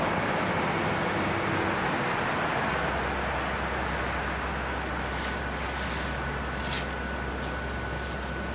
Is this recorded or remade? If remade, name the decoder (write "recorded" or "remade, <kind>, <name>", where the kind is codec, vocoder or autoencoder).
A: recorded